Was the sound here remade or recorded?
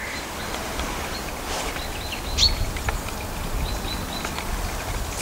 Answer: recorded